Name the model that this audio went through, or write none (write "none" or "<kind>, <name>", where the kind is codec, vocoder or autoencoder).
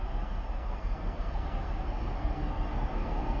codec, SNAC